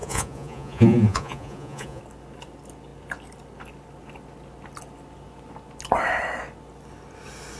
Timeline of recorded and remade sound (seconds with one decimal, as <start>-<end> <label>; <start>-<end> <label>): 0.0-2.0 remade; 2.0-7.6 recorded